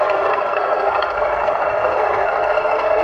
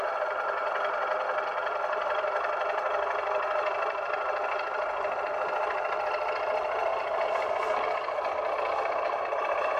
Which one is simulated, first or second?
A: first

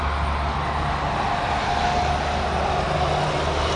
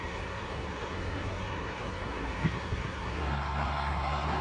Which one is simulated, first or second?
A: second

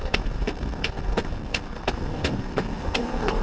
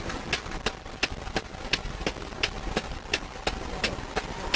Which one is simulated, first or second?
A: first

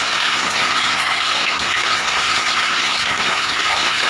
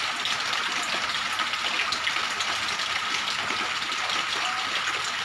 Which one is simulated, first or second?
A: first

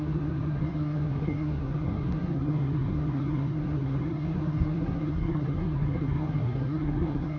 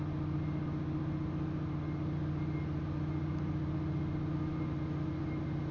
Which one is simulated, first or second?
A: first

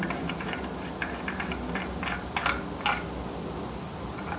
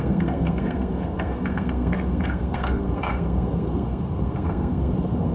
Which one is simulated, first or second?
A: second